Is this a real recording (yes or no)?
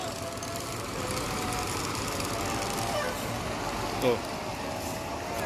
yes